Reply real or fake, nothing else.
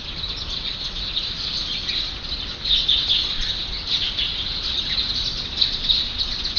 real